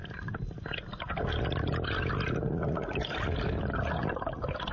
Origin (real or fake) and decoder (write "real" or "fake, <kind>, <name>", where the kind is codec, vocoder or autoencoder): real